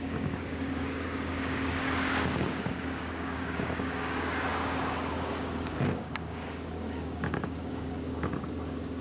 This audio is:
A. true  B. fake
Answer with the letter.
B